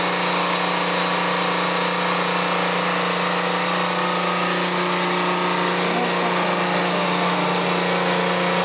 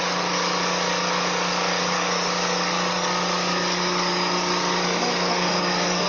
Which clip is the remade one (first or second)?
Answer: second